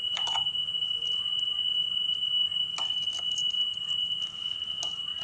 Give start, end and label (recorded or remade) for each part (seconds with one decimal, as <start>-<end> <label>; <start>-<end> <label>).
0.0-5.2 recorded